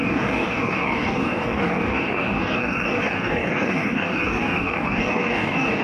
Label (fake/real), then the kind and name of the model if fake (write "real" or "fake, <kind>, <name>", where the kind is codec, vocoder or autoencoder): fake, codec, DAC